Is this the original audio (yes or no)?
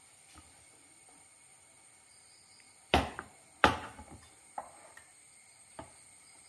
yes